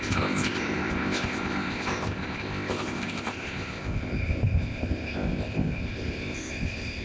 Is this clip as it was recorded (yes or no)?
no